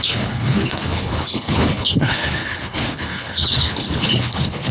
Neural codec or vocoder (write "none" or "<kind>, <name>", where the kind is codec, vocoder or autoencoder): codec, HILCodec